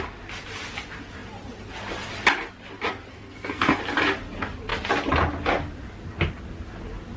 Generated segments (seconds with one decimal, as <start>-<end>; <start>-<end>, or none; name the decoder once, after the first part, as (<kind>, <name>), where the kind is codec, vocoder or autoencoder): 3.1-3.8 (codec, SNAC)